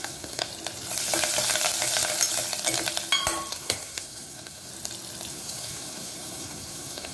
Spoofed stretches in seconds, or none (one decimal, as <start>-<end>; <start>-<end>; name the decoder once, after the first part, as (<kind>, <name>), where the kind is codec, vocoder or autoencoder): 0.0-0.5 (codec, SNAC); 3.5-4.7; 5.3-7.1